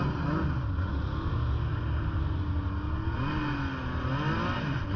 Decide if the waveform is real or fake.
real